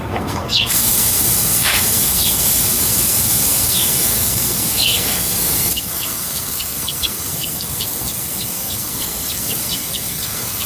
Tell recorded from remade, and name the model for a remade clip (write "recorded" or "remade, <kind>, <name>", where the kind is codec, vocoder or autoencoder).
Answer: remade, codec, SNAC